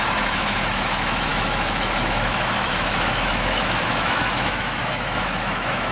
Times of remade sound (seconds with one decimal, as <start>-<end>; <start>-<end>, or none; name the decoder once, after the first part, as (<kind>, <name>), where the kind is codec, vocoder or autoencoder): 0.0-5.9 (autoencoder, DAC-VAE)